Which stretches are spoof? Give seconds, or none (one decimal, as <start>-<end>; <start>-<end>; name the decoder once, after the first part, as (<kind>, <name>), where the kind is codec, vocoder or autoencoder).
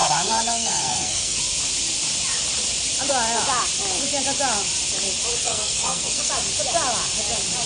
0.0-1.4 (codec, SNAC); 5.4-6.3